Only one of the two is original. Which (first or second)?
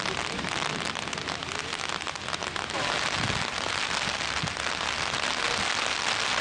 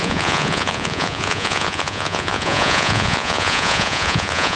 first